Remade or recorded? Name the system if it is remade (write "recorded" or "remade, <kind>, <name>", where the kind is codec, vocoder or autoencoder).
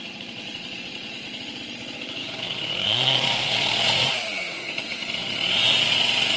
remade, vocoder, Vocos